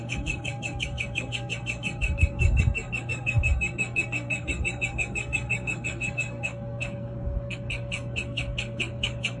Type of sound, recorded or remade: remade